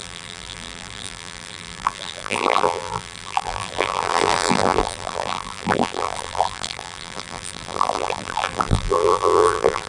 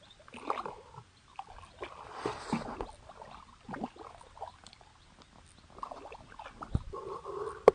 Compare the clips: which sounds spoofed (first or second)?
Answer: first